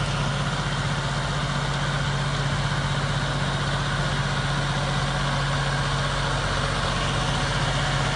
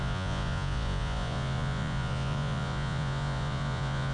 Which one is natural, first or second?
first